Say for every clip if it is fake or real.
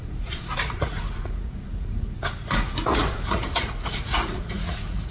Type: fake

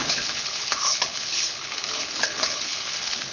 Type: fake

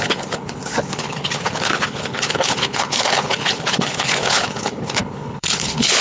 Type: fake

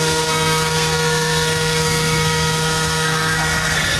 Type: fake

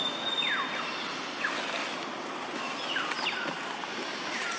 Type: real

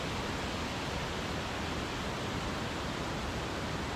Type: real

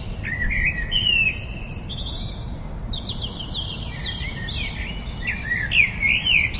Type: real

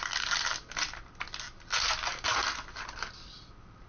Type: real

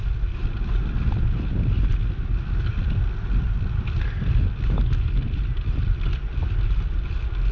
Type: real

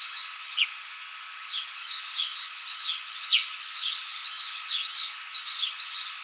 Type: fake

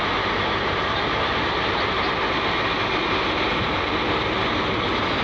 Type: real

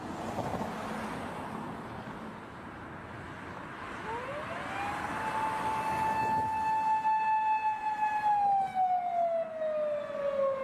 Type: real